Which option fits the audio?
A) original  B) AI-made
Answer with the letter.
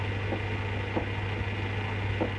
A